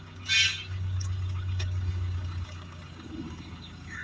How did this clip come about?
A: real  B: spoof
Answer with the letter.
B